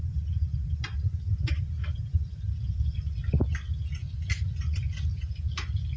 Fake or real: real